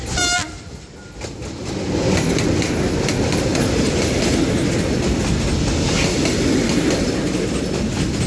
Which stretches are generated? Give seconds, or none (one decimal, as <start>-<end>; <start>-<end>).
none

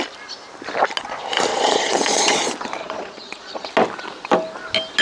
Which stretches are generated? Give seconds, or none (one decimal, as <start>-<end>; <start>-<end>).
1.5-2.4; 2.8-3.7

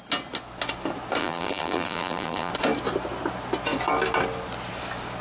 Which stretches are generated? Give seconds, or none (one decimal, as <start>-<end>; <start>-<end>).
1.2-2.5

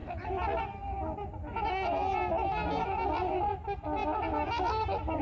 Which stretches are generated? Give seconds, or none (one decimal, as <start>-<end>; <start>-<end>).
none